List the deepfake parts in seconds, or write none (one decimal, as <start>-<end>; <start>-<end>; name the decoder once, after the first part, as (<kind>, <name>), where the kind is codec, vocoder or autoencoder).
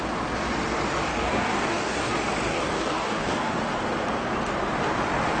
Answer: 1.1-2.1 (codec, DAC); 2.5-3.6